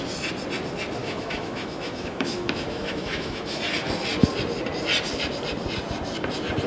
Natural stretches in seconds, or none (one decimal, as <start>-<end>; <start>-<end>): 0.0-1.0; 3.6-6.7

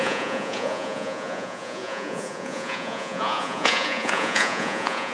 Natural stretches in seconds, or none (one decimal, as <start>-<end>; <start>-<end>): none

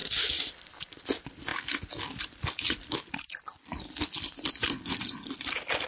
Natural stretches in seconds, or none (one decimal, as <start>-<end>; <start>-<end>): 0.0-5.9

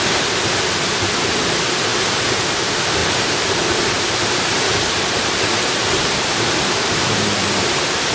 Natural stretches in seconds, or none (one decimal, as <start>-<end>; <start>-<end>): 0.0-3.0